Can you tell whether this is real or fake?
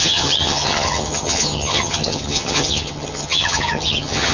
fake